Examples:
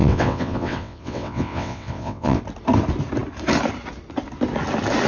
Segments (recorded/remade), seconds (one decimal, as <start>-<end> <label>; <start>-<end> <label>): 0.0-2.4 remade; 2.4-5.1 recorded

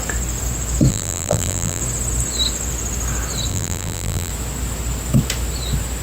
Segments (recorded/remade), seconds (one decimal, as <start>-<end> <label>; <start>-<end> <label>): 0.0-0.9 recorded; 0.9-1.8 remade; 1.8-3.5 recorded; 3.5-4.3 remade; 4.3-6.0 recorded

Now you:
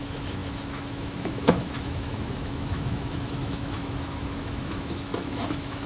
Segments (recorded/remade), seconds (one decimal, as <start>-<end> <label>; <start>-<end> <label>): 0.0-5.9 remade

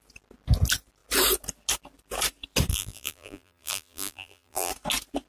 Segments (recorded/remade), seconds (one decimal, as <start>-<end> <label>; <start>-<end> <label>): 0.0-2.7 recorded; 2.7-4.7 remade; 4.7-5.3 recorded